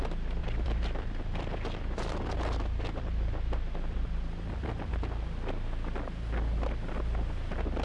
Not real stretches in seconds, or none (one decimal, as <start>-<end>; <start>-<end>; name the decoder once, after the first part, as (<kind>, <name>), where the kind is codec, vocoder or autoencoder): 0.4-4.9 (vocoder, BigVGAN v2)